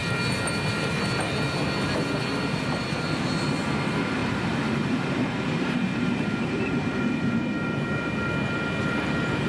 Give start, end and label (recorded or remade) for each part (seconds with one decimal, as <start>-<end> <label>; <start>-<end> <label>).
0.0-4.2 recorded; 4.2-8.3 remade; 8.3-9.5 recorded